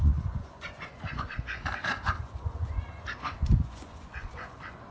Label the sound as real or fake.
fake